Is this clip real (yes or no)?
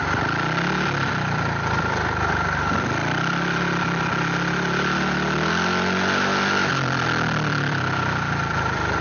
no